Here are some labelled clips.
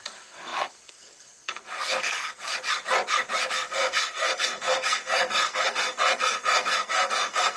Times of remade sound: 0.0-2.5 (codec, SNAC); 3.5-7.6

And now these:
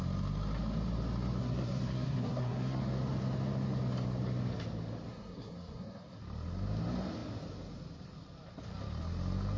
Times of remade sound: 1.4-2.8 (codec, SNAC); 5.1-6.2

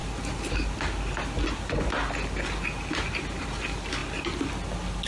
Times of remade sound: none

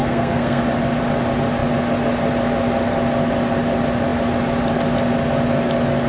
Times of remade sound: 0.0-0.6 (codec, SNAC)

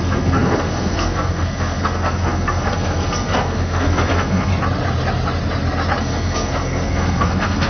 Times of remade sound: 0.0-4.5 (codec, SNAC); 6.0-7.7

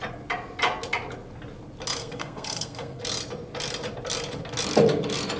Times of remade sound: 2.0-3.0 (codec, SNAC)